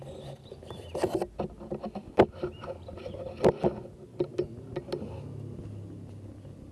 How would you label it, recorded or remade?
recorded